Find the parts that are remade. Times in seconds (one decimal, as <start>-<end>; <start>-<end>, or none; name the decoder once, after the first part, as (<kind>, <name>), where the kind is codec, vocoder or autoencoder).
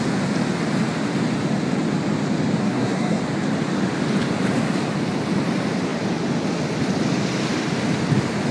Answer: 2.6-3.2 (codec, SNAC)